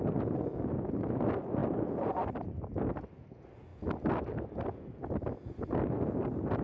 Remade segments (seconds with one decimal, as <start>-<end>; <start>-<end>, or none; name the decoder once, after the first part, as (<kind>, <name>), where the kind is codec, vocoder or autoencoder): 1.6-2.8 (vocoder, BigVGAN v2)